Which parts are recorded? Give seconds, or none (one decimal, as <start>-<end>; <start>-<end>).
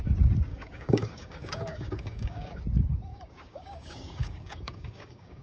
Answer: 0.0-0.5; 2.6-3.1